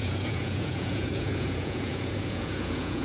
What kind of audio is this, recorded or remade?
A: remade